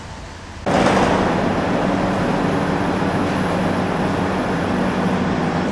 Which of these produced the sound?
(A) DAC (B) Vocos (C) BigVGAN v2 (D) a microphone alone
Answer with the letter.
D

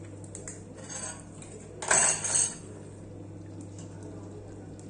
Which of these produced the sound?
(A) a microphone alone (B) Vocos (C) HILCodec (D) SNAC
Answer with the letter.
A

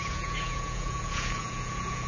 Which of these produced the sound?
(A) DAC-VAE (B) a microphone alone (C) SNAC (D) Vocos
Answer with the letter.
D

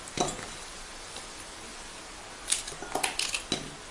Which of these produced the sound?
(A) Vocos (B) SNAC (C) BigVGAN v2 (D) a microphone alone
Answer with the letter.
D